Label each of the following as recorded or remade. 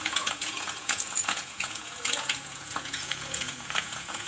remade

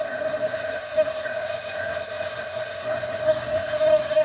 remade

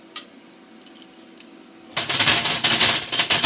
recorded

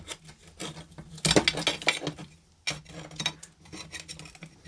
recorded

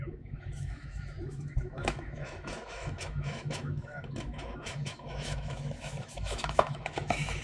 remade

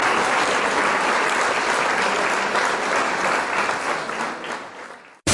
recorded